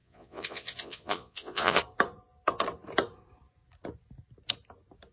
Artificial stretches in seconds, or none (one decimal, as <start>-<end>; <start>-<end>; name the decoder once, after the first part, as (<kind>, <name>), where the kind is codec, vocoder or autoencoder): 0.0-1.8 (vocoder, Vocos)